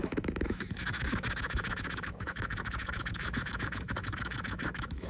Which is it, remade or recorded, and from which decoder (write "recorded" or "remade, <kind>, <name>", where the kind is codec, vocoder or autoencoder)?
remade, autoencoder, DAC-VAE